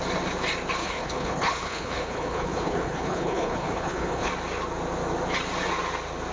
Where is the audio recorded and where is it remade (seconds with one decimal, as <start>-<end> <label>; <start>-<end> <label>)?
0.0-0.8 recorded; 0.8-4.3 remade; 4.3-6.3 recorded